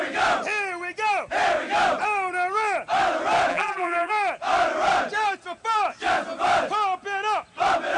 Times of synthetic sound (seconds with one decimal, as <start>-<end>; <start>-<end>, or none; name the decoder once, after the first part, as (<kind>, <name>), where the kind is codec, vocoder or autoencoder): 3.5-4.1 (vocoder, BigVGAN v2)